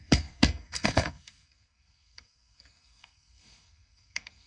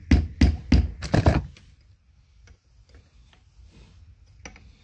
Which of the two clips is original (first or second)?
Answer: second